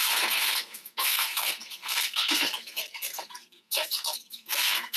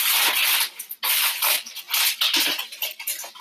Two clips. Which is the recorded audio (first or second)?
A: second